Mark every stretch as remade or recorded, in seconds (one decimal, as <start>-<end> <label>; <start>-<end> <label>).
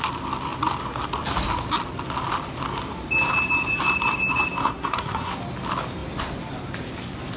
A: 0.0-4.6 recorded; 4.6-5.3 remade; 5.3-7.4 recorded